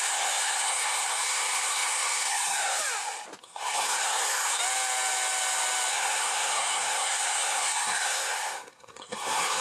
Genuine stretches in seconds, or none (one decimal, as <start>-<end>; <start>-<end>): 2.8-3.4; 4.6-5.9